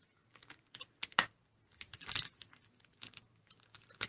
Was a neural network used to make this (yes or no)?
no